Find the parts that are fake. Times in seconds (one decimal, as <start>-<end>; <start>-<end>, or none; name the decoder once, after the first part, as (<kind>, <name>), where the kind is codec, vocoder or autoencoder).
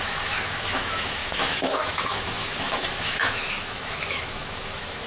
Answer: 0.0-5.1 (autoencoder, DAC-VAE)